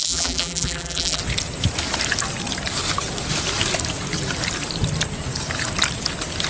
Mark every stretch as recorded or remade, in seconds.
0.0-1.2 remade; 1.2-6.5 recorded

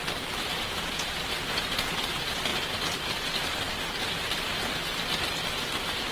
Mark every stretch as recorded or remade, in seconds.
0.0-0.5 recorded; 0.5-1.9 remade; 1.9-6.1 recorded

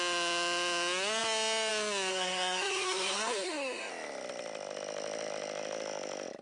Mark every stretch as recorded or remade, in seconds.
0.0-2.1 recorded; 2.1-3.9 remade; 3.9-6.4 recorded